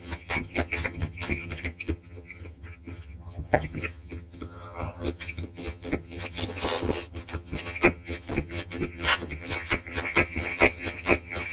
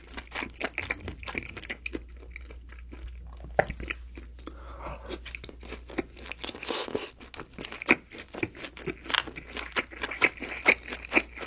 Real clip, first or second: second